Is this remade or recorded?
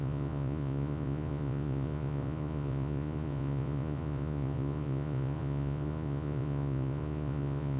remade